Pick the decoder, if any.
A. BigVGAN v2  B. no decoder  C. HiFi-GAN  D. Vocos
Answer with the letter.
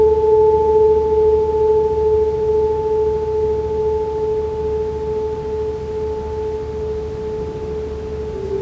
B